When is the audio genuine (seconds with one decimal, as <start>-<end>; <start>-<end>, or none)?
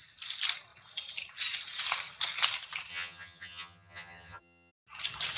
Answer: 0.0-2.9; 4.7-5.4